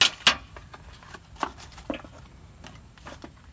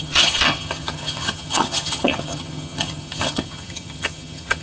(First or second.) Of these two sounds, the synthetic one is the second